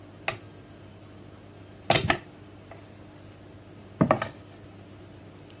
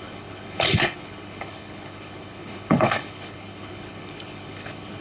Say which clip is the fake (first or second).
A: second